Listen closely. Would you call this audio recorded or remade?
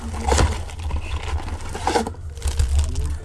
recorded